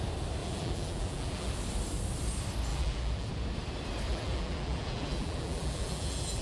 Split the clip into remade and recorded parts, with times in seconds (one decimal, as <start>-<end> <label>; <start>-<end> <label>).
0.0-0.4 recorded; 0.4-1.5 remade; 1.5-2.7 recorded; 2.7-3.3 remade; 3.3-4.1 recorded; 4.1-6.4 remade